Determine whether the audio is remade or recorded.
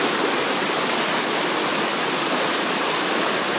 recorded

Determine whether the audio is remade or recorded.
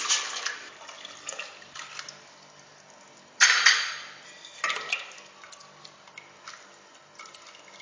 recorded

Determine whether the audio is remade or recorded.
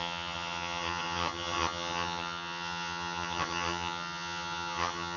remade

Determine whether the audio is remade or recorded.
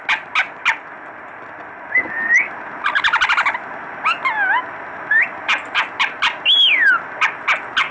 recorded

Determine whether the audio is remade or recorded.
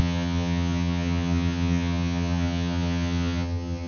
remade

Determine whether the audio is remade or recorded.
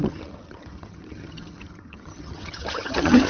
remade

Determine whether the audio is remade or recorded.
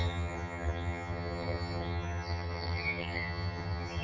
remade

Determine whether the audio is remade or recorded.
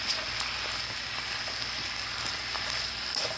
recorded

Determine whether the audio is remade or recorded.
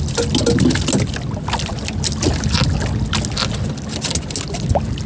recorded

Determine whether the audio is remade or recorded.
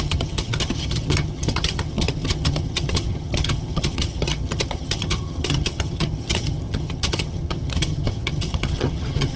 remade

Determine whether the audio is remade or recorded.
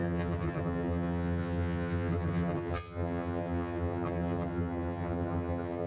remade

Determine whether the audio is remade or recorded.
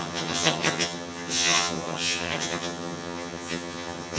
remade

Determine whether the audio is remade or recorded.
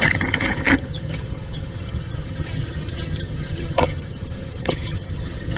remade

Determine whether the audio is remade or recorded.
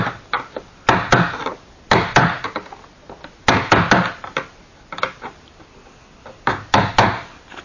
recorded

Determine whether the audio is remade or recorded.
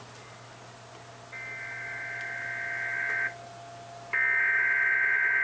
recorded